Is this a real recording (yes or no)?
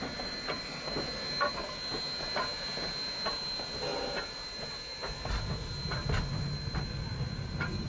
yes